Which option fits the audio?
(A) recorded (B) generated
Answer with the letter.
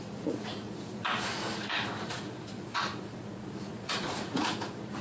B